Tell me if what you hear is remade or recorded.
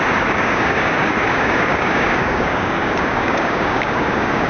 remade